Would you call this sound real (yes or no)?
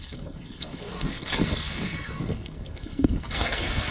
no